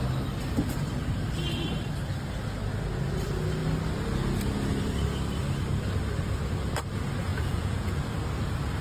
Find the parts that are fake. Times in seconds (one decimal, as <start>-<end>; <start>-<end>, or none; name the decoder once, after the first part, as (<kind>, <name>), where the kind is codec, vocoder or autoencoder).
7.3-8.1 (vocoder, Vocos)